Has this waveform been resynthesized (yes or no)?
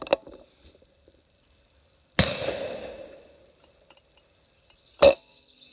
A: no